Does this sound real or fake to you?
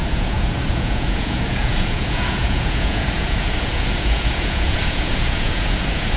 fake